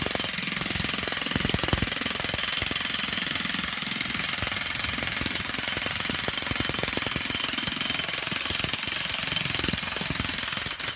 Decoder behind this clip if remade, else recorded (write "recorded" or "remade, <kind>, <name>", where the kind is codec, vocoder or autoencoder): recorded